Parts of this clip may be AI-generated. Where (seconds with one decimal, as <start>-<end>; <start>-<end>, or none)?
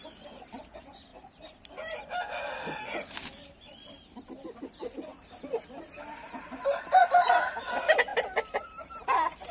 8.1-9.5